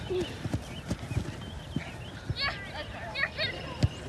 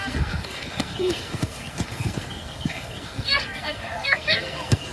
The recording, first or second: first